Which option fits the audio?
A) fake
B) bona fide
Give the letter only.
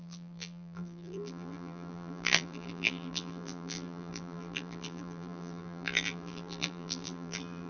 A